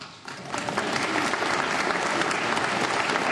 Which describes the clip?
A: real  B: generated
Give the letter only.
A